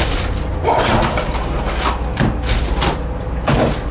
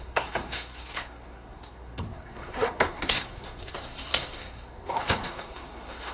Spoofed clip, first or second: second